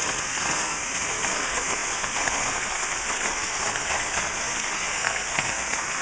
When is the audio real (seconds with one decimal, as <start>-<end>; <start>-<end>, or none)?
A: none